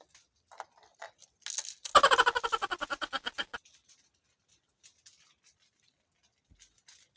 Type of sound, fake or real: real